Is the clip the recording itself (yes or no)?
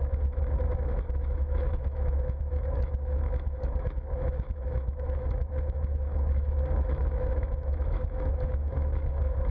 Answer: no